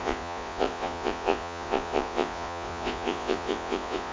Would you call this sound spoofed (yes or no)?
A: yes